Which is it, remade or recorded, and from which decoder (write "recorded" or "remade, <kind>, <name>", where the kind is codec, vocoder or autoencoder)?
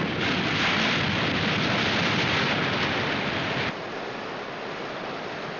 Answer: recorded